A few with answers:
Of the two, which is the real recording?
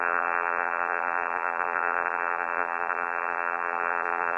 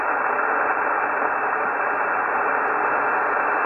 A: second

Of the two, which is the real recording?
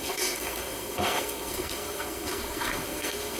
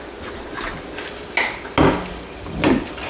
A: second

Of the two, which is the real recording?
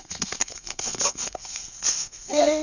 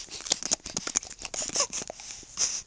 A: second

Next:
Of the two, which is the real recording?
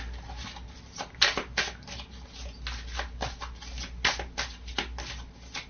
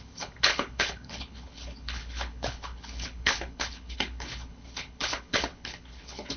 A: first